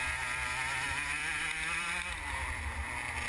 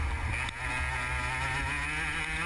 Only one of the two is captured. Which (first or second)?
second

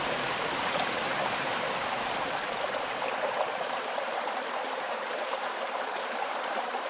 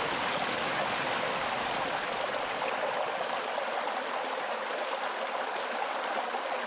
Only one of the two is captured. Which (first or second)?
second